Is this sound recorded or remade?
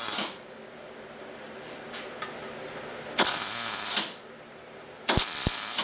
recorded